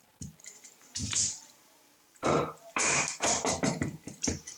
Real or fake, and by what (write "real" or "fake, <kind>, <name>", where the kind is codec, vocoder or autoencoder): fake, vocoder, BigVGAN v2